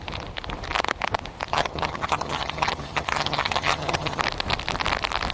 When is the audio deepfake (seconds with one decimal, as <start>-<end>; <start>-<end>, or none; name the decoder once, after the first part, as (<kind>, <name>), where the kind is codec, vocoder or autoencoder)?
1.5-4.2 (vocoder, HiFi-GAN)